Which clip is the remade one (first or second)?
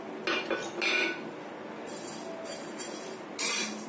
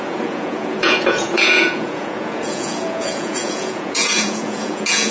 second